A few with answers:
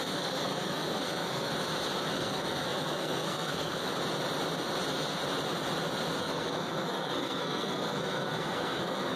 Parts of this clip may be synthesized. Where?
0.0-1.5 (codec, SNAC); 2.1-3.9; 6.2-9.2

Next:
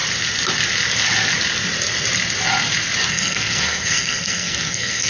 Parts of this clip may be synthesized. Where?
3.1-5.1 (codec, SNAC)

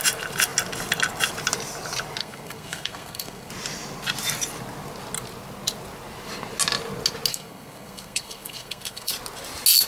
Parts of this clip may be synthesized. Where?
2.2-3.5 (codec, SNAC); 7.3-9.1

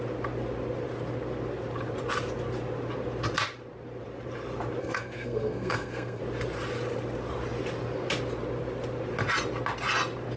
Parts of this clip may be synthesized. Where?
4.8-6.2 (codec, SNAC)

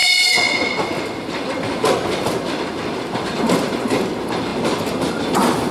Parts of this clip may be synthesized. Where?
none

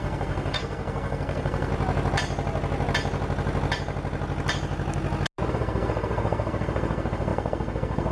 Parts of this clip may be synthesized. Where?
0.0-1.7 (codec, SNAC); 5.5-8.1

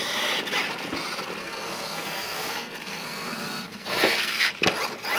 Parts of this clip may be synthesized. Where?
1.4-4.5 (codec, SNAC)

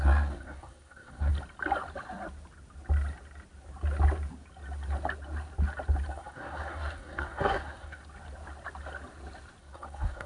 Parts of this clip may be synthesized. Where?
0.0-1.3 (codec, SNAC); 6.1-8.0; 9.6-10.3